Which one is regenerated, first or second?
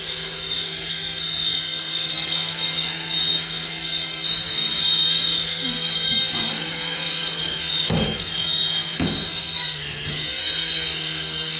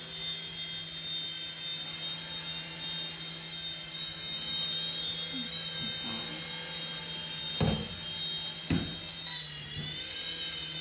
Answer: first